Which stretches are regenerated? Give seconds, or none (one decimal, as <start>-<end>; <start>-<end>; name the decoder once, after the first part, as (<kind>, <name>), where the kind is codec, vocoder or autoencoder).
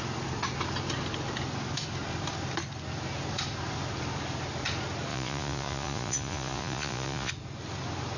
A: 5.1-7.3 (vocoder, Vocos)